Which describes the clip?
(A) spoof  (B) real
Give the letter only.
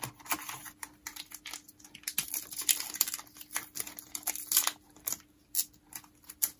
B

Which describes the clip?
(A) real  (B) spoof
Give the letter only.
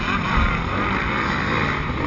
A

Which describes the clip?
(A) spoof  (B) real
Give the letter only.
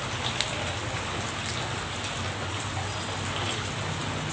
B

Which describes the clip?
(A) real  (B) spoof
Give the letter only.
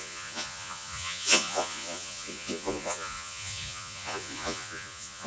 B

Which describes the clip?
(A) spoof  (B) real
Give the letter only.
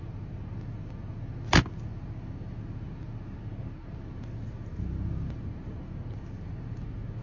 B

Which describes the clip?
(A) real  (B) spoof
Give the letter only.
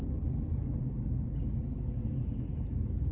A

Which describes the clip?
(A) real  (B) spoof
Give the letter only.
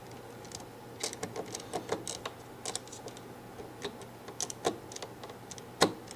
A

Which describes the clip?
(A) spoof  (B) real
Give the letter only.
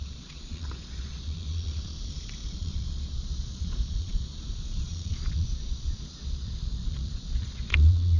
A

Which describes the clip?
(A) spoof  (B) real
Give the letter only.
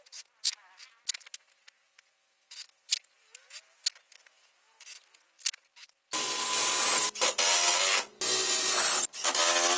B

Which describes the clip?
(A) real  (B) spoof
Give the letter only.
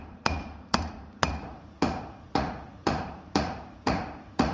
B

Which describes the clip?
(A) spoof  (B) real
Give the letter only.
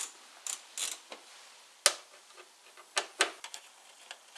B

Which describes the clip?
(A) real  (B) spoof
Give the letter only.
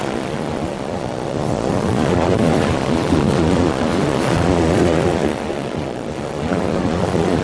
B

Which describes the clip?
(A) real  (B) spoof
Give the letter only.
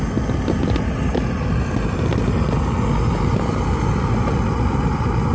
A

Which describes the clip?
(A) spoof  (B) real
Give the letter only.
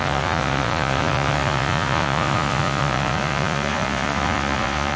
A